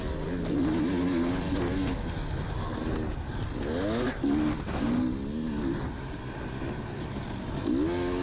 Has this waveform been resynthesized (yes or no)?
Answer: no